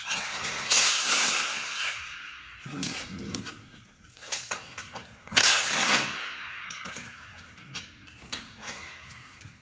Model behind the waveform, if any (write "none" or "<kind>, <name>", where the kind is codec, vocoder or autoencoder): codec, SNAC